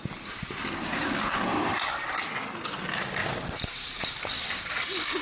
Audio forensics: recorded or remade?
recorded